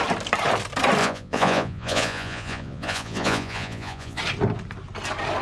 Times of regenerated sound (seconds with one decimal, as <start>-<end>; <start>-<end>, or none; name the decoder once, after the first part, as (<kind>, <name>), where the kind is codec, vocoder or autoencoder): 1.0-4.2 (vocoder, Vocos)